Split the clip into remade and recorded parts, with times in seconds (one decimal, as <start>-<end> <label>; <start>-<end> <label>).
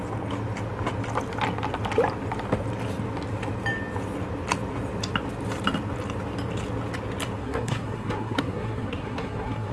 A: 0.0-7.4 recorded; 7.4-9.7 remade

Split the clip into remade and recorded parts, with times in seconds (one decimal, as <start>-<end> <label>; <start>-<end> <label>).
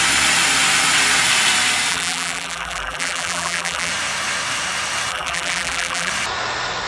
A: 0.0-1.9 recorded; 1.9-3.9 remade; 3.9-5.1 recorded; 5.1-6.1 remade; 6.1-6.9 recorded